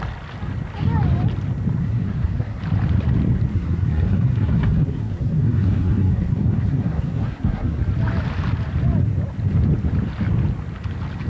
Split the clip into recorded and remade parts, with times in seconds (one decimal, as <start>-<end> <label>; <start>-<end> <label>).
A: 0.0-1.8 recorded; 1.8-2.6 remade; 2.6-3.5 recorded; 3.5-7.8 remade; 7.8-11.3 recorded